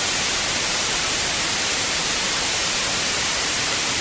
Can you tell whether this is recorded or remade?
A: remade